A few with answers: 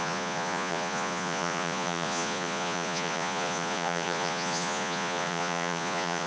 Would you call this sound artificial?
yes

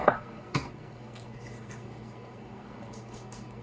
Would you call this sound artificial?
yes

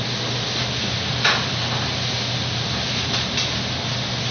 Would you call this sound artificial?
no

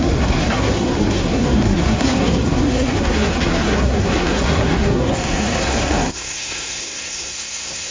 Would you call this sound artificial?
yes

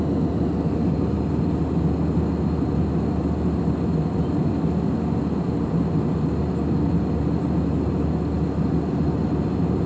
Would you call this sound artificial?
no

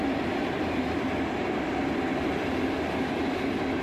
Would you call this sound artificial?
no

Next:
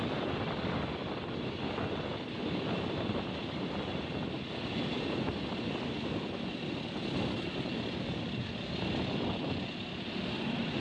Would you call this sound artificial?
no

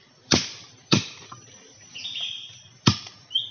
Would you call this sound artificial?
yes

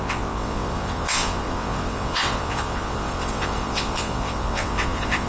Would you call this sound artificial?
yes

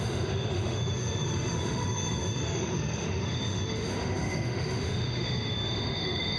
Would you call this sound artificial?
yes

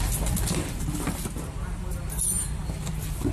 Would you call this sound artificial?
no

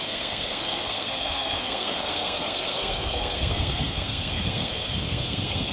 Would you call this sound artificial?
yes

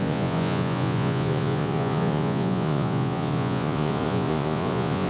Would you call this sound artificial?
yes